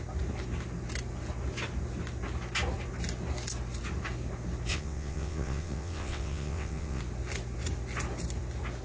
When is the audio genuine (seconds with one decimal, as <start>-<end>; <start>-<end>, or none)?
0.0-4.7; 7.0-8.8